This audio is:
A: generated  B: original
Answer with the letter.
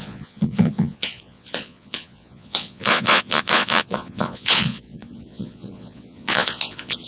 A